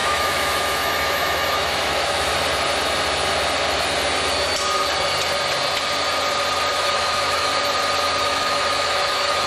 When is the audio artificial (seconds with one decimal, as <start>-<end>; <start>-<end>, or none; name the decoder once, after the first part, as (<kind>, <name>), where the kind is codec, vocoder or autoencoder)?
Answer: 0.0-2.3 (autoencoder, DAC-VAE); 6.7-7.5; 8.2-9.5